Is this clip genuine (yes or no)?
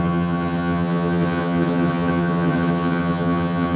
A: no